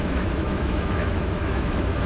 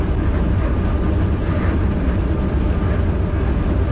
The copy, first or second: first